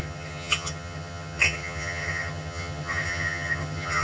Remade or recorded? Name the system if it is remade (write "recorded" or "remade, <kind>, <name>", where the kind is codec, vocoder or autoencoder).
remade, vocoder, HiFi-GAN